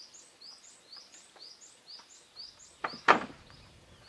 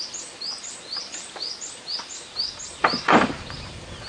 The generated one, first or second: second